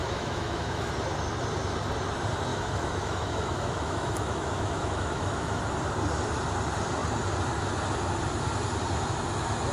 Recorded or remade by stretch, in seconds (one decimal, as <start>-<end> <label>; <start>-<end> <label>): 0.0-0.9 remade; 0.9-2.5 recorded; 2.5-5.6 remade; 5.6-9.7 recorded